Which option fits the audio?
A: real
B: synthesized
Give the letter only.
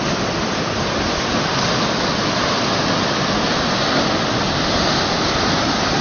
A